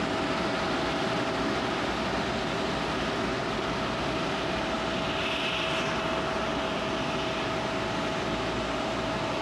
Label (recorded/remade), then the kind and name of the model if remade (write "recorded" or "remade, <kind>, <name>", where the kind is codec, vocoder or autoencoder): recorded